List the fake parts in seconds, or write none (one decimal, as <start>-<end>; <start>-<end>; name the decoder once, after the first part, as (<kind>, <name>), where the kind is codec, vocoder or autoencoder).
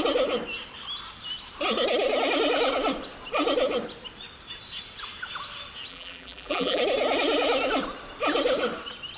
5.9-6.8 (vocoder, BigVGAN v2)